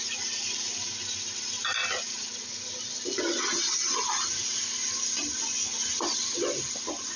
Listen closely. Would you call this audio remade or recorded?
recorded